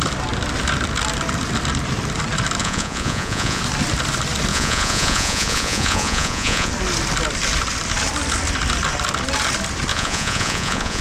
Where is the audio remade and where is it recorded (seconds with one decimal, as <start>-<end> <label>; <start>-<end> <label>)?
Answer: 0.0-2.6 recorded; 2.6-3.6 remade; 3.6-4.5 recorded; 4.5-6.7 remade; 6.7-9.9 recorded; 9.9-11.0 remade